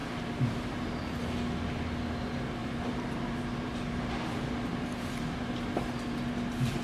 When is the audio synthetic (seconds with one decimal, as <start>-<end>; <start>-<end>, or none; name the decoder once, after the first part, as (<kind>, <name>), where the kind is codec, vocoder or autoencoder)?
0.0-0.8 (vocoder, BigVGAN v2); 2.6-4.1